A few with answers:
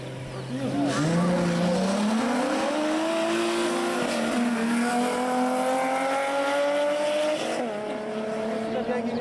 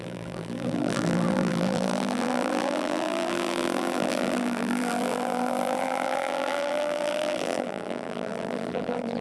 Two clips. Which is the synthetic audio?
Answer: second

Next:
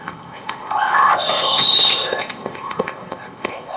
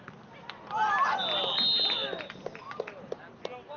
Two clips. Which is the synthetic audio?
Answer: first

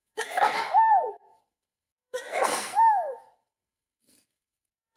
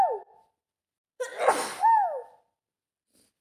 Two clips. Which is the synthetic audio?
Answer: first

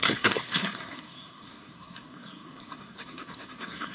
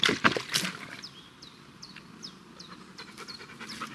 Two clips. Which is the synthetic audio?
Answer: first